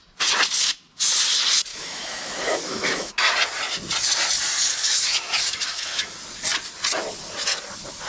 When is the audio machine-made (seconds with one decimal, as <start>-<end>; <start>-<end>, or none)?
1.7-3.2; 4.7-6.1